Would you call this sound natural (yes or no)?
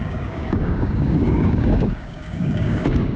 no